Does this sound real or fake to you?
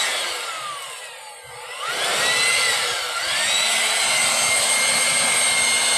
real